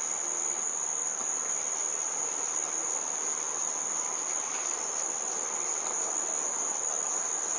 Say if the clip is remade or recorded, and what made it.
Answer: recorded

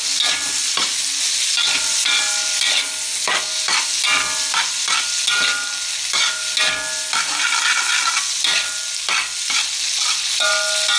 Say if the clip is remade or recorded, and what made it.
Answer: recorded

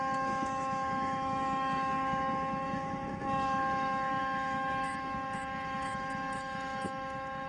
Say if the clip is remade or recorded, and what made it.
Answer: remade, autoencoder, DAC-VAE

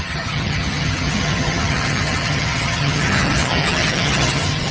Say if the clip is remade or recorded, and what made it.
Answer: remade, vocoder, HiFi-GAN